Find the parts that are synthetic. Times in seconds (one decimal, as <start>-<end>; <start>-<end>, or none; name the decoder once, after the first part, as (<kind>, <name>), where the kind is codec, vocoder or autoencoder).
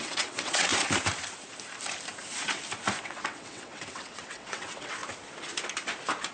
0.0-0.7 (vocoder, WaveNeXt); 3.0-5.0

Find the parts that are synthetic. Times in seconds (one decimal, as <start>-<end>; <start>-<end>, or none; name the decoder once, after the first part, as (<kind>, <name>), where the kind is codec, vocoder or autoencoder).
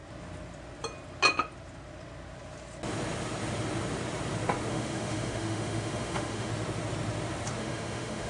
4.7-6.5 (autoencoder, DAC-VAE); 7.6-8.3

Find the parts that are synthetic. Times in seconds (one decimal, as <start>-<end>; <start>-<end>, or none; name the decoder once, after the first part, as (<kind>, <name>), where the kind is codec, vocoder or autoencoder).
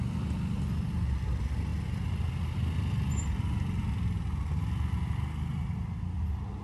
none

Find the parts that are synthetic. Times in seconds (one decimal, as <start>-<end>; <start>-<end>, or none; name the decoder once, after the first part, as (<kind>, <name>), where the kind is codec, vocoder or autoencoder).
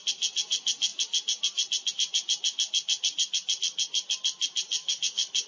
4.8-5.5 (autoencoder, DAC-VAE)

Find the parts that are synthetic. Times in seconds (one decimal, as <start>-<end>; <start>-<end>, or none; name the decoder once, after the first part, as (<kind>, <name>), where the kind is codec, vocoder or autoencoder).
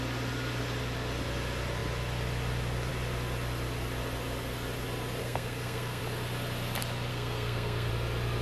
5.2-6.0 (codec, SNAC); 7.1-7.9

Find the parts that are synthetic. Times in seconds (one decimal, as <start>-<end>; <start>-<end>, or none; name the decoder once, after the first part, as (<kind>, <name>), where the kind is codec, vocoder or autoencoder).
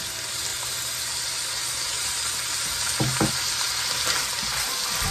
none